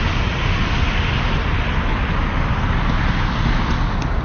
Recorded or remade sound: recorded